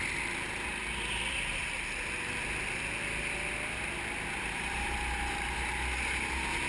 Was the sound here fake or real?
real